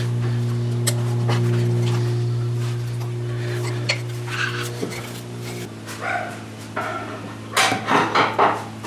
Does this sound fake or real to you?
real